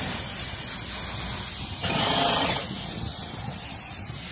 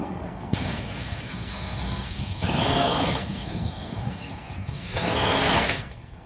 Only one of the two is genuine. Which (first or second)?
first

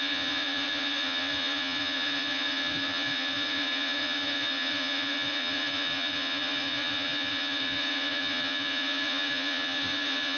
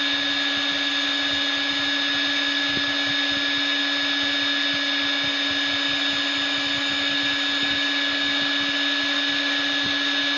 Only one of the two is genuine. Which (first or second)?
second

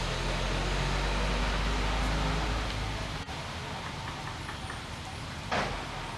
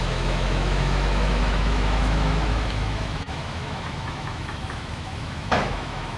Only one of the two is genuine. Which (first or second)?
first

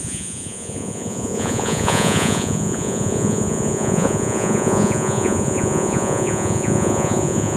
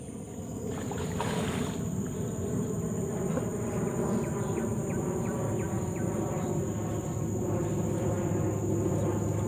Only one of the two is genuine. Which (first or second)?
second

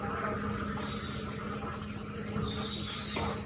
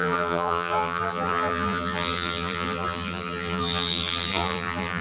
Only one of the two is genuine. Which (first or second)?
first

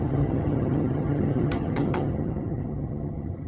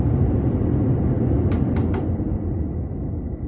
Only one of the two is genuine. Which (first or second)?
second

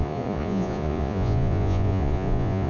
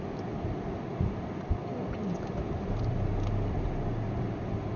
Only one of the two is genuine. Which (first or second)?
second